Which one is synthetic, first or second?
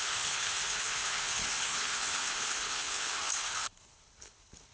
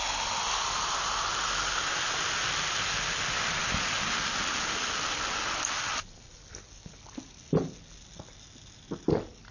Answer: first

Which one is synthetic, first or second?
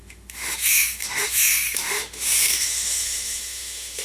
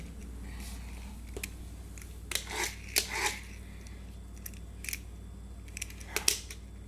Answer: first